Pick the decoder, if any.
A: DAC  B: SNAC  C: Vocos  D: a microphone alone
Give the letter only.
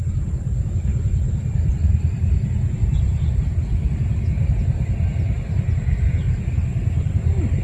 D